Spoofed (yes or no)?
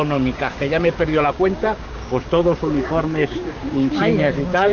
yes